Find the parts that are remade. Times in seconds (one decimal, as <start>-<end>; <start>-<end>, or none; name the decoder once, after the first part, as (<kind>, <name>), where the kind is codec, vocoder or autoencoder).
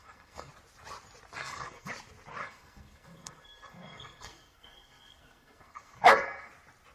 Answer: 0.0-0.5 (codec, SNAC); 1.4-1.9; 2.4-6.5